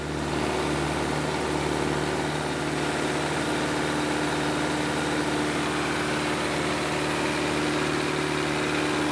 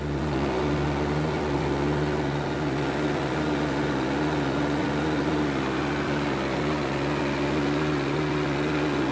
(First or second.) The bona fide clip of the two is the first